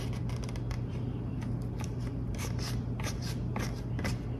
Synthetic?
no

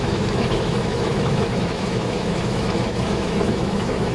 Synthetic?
yes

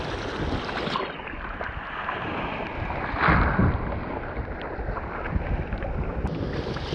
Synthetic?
no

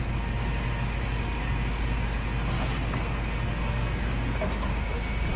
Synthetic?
no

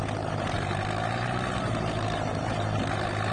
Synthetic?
no